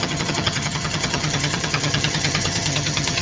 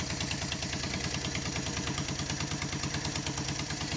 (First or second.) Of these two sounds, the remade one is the first